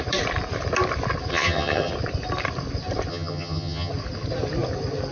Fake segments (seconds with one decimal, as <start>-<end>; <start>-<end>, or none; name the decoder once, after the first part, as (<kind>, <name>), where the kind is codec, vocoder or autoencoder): 1.3-1.9 (vocoder, HiFi-GAN); 3.1-3.9